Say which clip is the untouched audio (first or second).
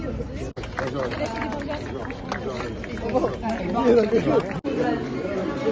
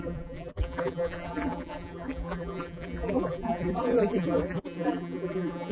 first